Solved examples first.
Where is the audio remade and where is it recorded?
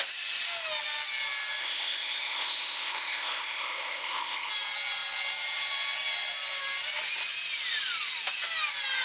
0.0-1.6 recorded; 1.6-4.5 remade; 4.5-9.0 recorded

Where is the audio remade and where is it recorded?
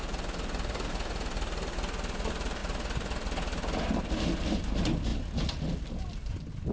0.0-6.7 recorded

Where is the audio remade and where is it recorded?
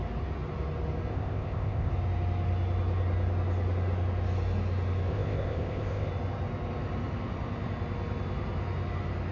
0.0-1.1 recorded; 1.1-1.9 remade; 1.9-5.1 recorded; 5.1-6.1 remade; 6.1-9.3 recorded